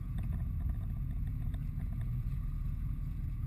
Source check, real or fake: fake